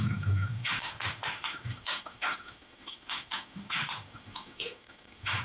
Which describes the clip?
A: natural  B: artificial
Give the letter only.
B